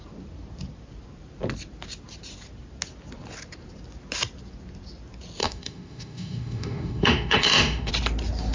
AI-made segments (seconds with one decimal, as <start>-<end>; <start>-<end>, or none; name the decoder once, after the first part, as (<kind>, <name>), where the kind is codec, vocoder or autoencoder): 5.4-7.9 (autoencoder, DAC-VAE)